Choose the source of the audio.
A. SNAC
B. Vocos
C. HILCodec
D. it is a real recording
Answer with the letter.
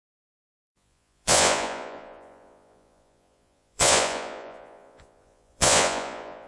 B